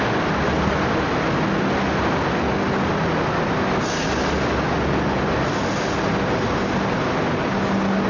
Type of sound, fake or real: real